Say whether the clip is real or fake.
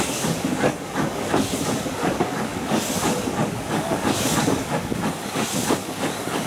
fake